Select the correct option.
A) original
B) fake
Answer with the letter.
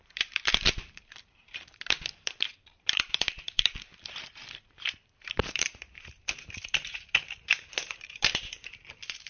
B